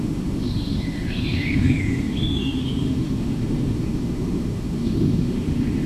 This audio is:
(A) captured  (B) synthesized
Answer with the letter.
B